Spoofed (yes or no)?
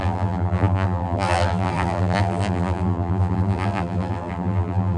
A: yes